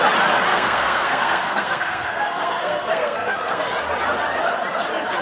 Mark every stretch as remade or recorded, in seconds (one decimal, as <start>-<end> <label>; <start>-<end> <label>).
0.0-0.5 recorded; 0.5-3.6 remade; 3.6-5.2 recorded